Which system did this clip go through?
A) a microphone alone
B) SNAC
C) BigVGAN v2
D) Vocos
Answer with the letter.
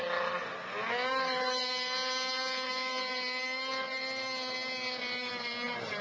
A